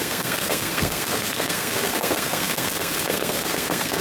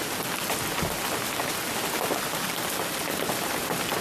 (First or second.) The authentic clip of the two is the second